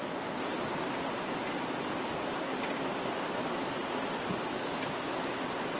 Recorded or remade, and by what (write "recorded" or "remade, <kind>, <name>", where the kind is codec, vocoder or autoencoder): recorded